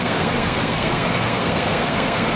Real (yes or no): no